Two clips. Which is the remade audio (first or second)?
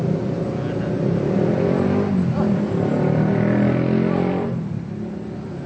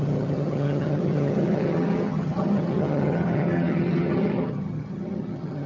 second